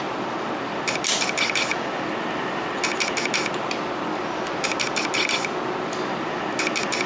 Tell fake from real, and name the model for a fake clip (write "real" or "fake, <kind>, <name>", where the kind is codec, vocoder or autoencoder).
real